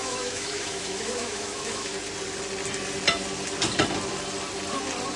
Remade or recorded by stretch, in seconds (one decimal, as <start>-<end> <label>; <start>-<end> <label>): 0.0-1.9 remade; 1.9-5.2 recorded